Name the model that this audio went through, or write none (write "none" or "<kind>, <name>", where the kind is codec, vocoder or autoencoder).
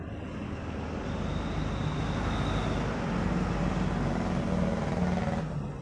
none